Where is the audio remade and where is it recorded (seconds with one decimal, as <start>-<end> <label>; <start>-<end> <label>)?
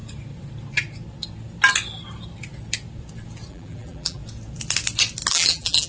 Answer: 0.0-3.5 recorded; 3.5-4.2 remade; 4.2-5.3 recorded; 5.3-5.9 remade